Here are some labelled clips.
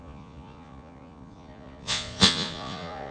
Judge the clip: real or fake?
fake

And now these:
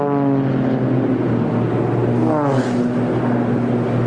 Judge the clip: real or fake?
real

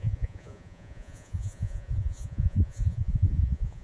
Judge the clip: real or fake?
fake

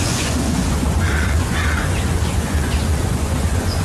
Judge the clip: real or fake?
fake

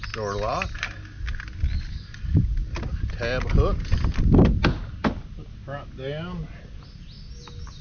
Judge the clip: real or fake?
real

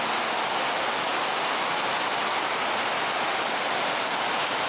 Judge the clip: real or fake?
real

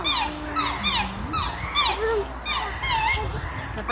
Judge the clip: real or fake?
real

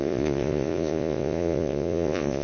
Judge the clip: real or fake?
fake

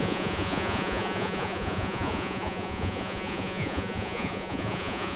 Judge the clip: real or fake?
fake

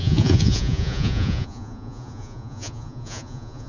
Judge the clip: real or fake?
fake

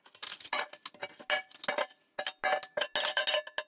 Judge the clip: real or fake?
real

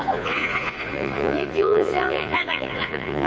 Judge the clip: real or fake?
fake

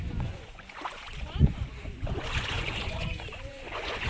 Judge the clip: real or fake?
fake